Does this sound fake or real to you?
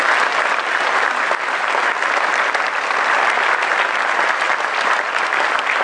real